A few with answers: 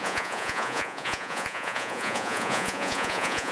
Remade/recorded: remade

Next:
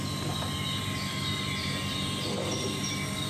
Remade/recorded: recorded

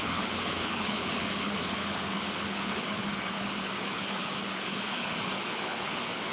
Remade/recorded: remade